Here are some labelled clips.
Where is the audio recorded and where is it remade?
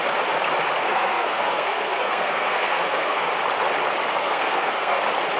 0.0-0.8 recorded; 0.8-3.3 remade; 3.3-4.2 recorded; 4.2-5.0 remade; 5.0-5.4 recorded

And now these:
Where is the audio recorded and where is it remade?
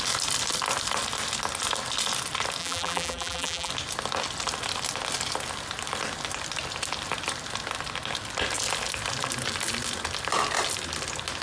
0.0-2.6 recorded; 2.6-3.7 remade; 3.7-11.4 recorded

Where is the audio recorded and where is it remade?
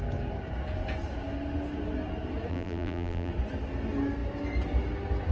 0.0-2.5 recorded; 2.5-3.3 remade; 3.3-5.3 recorded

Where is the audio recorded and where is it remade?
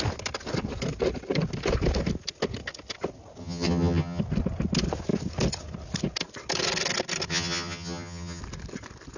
0.0-3.4 recorded; 3.4-4.2 remade; 4.2-7.3 recorded; 7.3-8.4 remade; 8.4-9.2 recorded